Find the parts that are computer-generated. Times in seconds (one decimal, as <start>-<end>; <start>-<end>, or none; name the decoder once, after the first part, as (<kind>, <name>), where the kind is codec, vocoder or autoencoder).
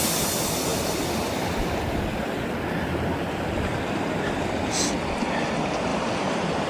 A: 0.7-4.7 (vocoder, BigVGAN v2); 5.9-6.7